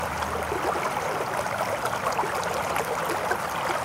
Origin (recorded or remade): recorded